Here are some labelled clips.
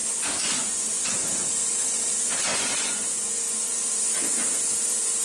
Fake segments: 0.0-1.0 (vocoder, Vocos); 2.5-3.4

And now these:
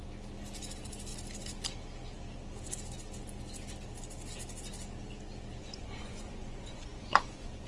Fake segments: 5.6-7.7 (vocoder, Vocos)

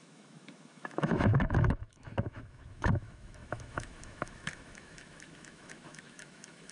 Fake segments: 0.0-6.7 (autoencoder, DAC-VAE)

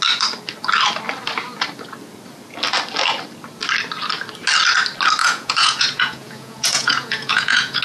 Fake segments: 5.2-7.8 (vocoder, Vocos)

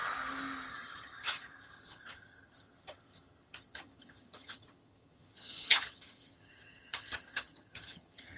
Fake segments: 0.7-8.4 (vocoder, HiFi-GAN)

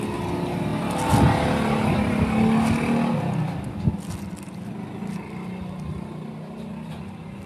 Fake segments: 6.7-7.5 (vocoder, BigVGAN v2)

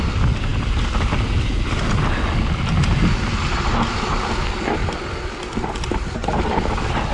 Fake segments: none

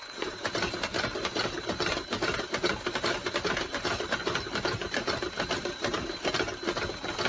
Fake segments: 0.0-6.5 (vocoder, BigVGAN v2)